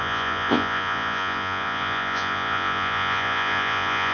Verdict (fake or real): fake